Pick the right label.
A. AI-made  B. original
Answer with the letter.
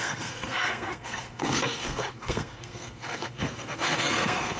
A